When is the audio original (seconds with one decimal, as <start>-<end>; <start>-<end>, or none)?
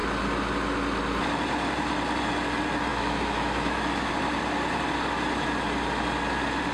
0.0-2.9; 4.1-6.7